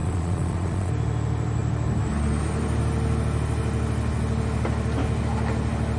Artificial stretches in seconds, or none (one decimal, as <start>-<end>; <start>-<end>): 0.0-0.9